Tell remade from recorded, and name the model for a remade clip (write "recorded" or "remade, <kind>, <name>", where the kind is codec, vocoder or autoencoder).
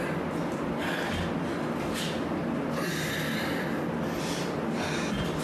recorded